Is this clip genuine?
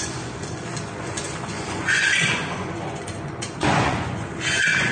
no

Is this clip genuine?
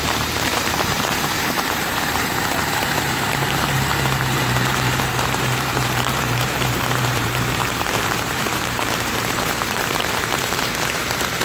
no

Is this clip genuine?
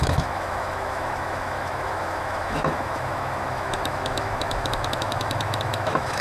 no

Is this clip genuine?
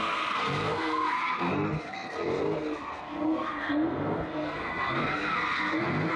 no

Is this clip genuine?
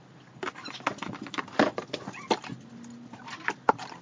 yes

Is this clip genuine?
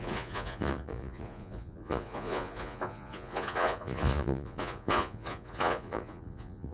no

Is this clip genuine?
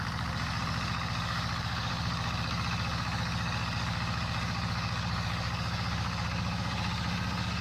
no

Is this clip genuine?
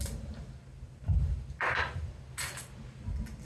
yes